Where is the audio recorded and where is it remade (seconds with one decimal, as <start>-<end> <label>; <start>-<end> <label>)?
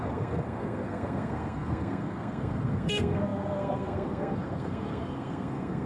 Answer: 0.0-5.9 remade